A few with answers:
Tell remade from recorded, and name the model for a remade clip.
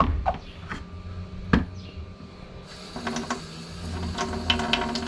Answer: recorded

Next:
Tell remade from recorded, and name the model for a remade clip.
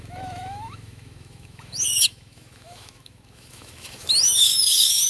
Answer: remade, autoencoder, DAC-VAE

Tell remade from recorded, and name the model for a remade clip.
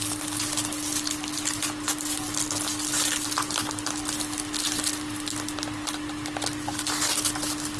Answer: recorded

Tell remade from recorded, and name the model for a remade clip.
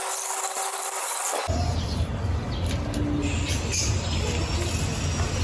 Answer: recorded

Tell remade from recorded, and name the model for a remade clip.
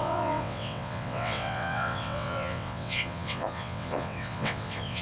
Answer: remade, vocoder, WaveNeXt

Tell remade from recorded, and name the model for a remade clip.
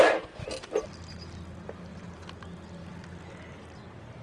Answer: recorded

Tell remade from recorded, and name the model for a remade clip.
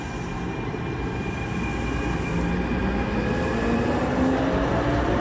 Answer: recorded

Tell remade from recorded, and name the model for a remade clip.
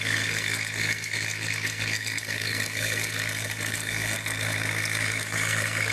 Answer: remade, codec, SNAC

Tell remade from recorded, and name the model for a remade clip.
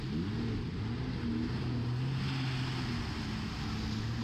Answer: recorded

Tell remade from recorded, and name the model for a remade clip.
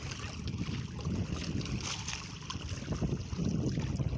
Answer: recorded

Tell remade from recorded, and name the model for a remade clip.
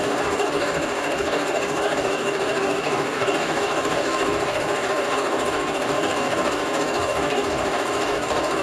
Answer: remade, codec, DAC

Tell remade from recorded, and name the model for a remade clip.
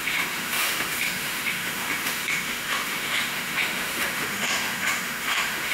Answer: remade, autoencoder, DAC-VAE